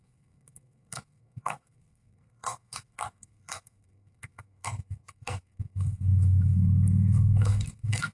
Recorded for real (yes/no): no